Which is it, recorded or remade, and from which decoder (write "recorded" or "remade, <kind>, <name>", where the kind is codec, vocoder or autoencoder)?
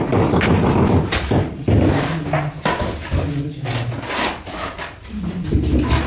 recorded